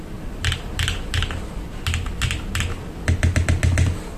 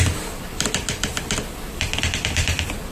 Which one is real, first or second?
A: first